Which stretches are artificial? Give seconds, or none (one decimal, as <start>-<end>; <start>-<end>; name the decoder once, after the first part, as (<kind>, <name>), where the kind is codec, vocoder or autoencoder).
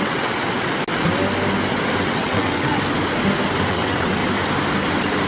0.0-0.4 (vocoder, WaveNeXt); 2.0-2.7; 3.7-4.2